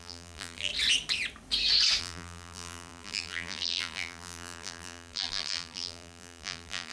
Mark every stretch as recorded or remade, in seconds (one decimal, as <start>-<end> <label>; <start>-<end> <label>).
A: 0.0-0.7 remade; 0.7-2.0 recorded; 2.0-6.9 remade